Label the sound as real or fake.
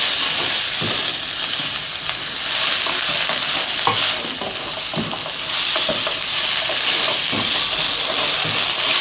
real